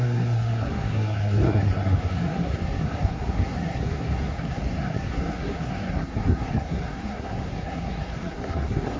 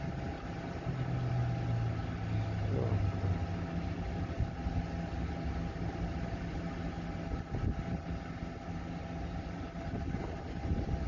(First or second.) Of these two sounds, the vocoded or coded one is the first